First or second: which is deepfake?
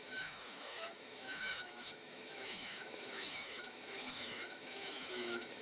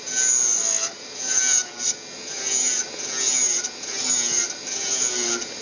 first